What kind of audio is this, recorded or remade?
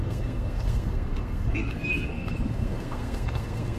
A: remade